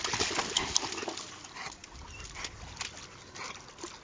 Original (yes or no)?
yes